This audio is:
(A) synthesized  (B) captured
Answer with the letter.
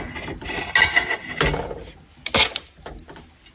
B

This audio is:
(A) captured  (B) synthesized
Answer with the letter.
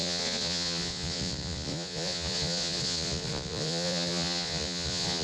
B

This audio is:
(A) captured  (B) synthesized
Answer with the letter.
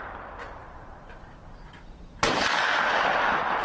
A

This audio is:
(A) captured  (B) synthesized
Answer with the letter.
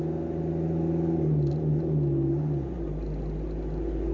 A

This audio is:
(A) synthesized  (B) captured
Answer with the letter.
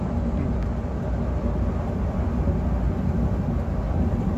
B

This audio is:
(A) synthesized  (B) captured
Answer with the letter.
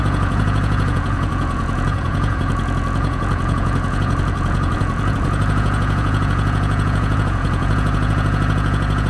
A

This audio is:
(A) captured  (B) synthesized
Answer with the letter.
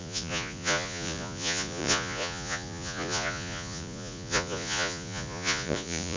B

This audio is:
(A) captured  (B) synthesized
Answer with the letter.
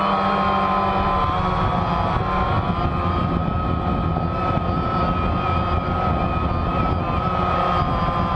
A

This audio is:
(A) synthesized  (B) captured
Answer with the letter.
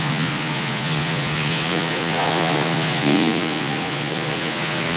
A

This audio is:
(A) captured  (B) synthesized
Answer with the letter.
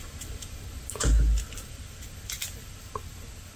A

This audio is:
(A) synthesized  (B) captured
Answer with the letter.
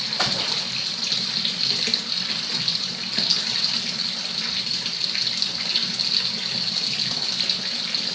B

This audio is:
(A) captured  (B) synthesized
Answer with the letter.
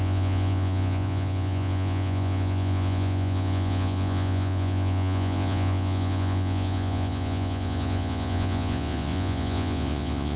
B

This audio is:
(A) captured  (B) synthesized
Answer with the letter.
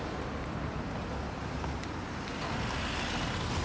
A